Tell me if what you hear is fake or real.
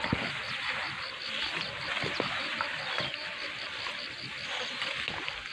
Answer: real